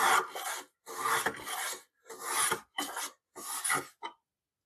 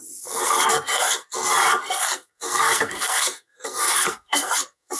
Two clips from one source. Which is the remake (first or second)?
second